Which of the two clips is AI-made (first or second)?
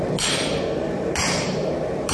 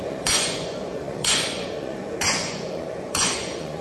second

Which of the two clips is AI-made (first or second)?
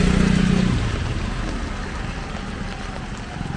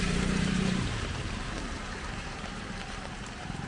second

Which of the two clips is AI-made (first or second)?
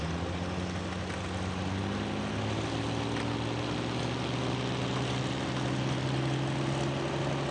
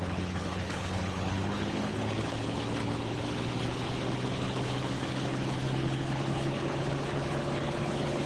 second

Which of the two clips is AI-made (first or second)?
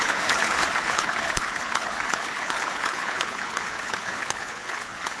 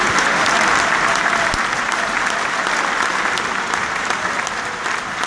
first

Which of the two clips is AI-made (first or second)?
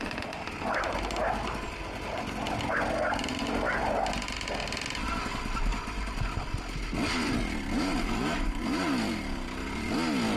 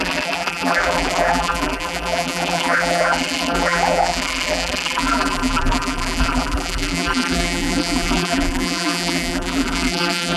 second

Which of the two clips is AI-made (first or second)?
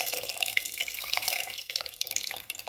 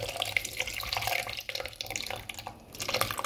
first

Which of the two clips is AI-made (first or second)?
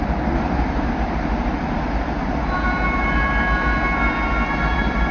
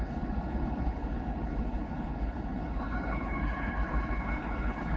second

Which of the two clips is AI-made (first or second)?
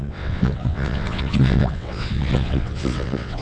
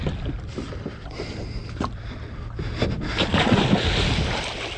first